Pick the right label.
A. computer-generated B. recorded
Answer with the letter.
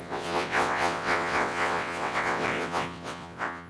A